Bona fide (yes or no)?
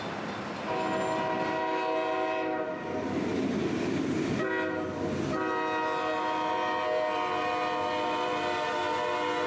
yes